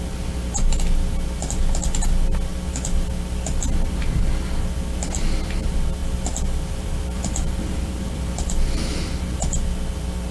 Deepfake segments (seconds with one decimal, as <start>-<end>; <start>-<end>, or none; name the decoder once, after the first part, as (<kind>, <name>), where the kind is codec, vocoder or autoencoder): 6.0-8.8 (vocoder, BigVGAN v2)